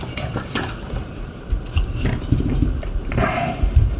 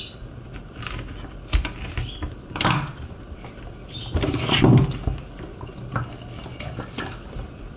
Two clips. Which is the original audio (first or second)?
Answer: second